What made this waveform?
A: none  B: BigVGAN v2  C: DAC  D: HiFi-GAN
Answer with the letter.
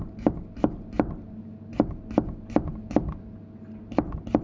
A